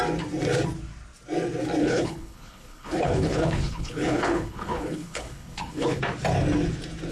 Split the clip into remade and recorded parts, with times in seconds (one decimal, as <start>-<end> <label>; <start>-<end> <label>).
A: 0.0-1.8 recorded; 1.8-6.0 remade; 6.0-7.1 recorded